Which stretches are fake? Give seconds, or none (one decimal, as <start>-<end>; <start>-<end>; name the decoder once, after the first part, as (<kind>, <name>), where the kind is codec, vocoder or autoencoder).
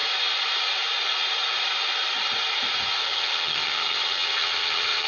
3.0-5.1 (vocoder, HiFi-GAN)